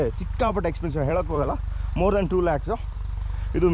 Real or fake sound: fake